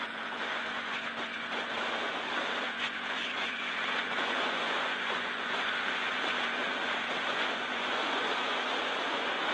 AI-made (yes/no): yes